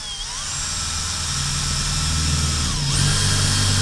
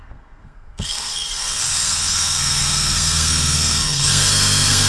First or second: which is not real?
second